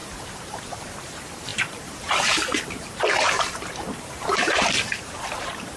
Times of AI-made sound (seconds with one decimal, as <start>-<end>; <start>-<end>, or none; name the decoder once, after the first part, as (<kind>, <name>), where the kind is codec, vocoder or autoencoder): 0.0-5.8 (vocoder, BigVGAN v2)